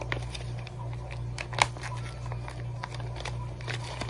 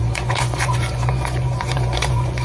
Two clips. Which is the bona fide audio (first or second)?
first